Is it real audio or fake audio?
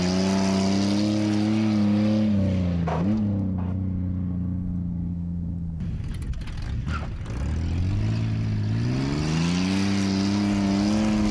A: real